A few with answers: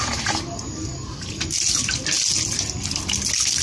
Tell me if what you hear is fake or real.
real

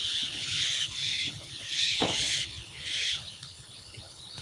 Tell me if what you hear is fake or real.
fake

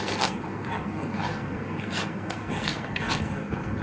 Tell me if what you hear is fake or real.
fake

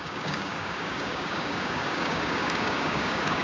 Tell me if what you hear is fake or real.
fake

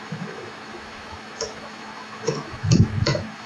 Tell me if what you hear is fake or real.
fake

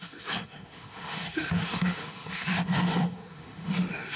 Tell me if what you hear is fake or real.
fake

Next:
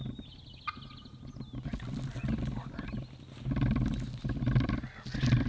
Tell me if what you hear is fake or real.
real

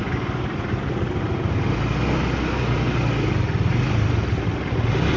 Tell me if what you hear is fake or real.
real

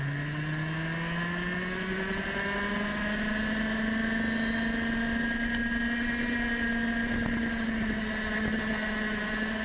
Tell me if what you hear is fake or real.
real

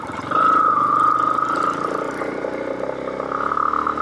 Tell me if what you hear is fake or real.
real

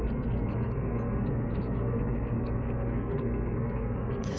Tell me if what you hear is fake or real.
fake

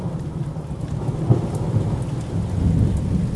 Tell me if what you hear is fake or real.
real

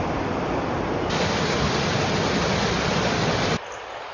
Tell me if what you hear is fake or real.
real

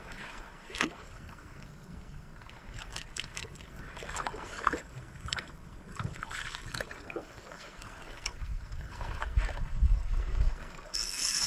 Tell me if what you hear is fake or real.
fake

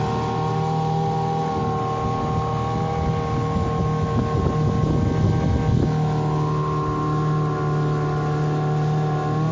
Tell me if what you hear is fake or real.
real